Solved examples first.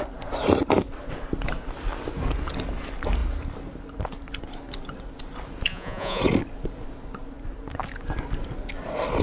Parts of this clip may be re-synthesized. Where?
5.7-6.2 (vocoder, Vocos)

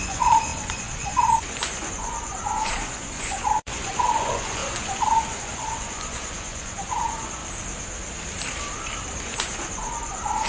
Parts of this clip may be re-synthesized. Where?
0.0-7.4 (vocoder, Vocos); 9.2-10.5

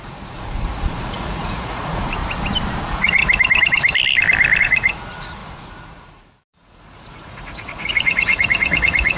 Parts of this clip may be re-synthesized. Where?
0.0-2.2 (vocoder, Vocos); 2.8-3.2; 4.6-9.2

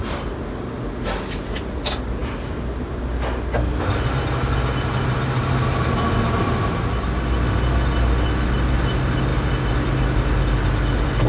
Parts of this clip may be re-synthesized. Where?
none

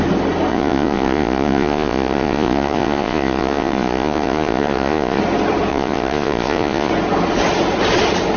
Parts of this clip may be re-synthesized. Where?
0.5-5.2 (vocoder, Vocos); 5.7-6.9

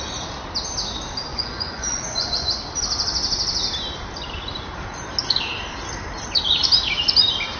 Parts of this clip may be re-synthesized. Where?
1.3-2.6 (vocoder, Vocos)

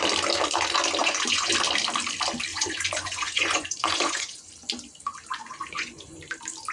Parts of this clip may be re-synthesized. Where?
1.0-1.5 (vocoder, Vocos); 2.5-4.5; 5.3-6.2